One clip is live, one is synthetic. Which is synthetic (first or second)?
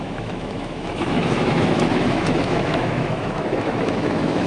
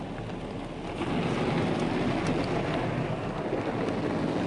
first